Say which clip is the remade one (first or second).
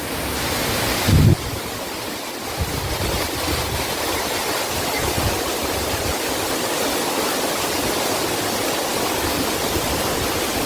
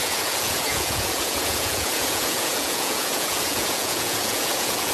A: second